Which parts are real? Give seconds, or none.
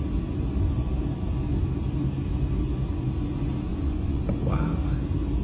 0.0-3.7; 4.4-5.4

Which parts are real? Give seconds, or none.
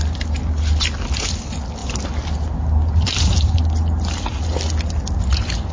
0.0-5.7